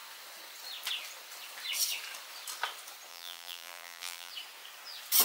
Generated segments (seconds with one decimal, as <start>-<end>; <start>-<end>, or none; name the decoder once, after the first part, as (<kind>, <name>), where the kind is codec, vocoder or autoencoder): 3.1-4.3 (vocoder, BigVGAN v2)

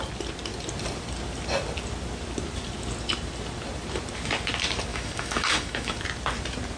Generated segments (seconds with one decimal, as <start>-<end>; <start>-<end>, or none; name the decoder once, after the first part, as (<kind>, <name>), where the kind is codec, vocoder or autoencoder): 4.9-6.0 (autoencoder, DAC-VAE)

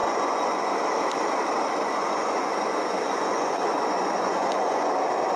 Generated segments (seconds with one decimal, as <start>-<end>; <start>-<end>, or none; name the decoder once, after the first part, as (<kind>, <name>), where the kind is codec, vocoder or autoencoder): 0.0-0.8 (vocoder, Vocos); 1.8-4.9

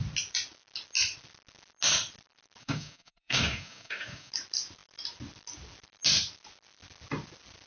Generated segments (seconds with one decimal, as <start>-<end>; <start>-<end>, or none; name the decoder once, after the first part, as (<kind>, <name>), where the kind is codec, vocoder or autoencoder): 2.6-4.3 (codec, DAC)